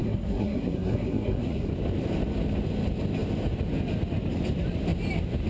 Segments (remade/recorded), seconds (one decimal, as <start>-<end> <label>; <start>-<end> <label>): 0.0-1.7 remade; 1.7-5.5 recorded